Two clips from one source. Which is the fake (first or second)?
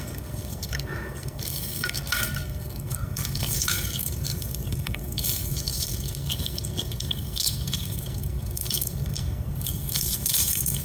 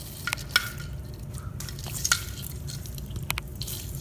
first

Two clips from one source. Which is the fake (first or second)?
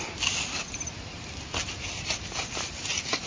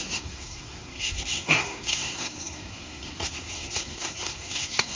second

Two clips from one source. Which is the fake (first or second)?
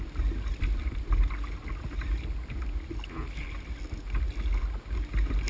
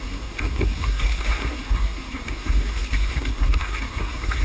second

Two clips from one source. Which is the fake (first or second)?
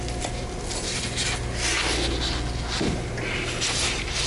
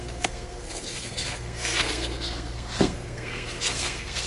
second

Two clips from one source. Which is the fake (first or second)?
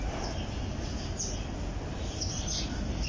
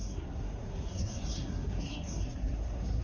second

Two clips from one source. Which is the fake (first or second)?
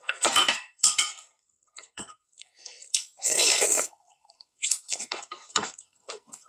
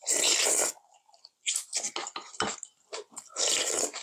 first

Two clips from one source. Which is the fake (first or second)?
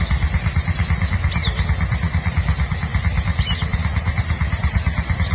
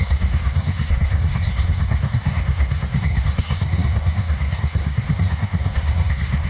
second